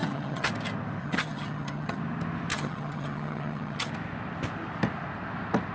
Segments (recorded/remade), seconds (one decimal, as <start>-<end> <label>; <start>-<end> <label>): 0.0-0.5 remade; 0.5-1.0 recorded; 1.0-2.0 remade; 2.0-2.5 recorded; 2.5-3.9 remade; 3.9-5.7 recorded